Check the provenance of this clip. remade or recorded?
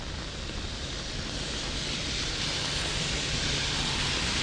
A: recorded